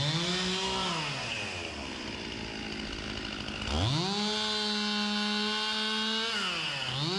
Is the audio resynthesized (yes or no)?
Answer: no